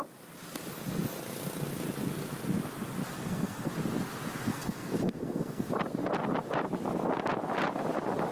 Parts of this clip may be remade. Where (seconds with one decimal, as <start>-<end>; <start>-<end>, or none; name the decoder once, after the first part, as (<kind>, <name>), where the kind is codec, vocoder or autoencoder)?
3.1-3.7 (codec, SNAC); 4.5-5.7